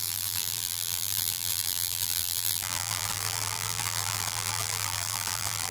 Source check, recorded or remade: remade